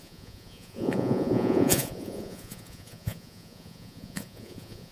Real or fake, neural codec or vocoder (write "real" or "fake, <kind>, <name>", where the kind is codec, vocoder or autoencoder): fake, vocoder, Vocos